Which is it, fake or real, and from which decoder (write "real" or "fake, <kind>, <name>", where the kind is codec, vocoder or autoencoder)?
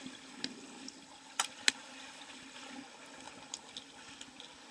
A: real